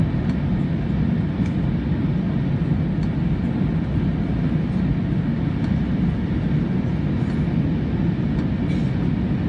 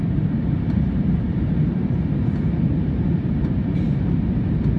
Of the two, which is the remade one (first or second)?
second